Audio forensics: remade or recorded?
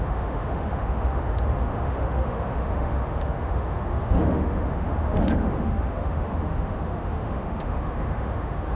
remade